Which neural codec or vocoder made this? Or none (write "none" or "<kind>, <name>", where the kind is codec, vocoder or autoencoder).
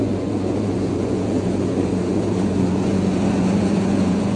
vocoder, Vocos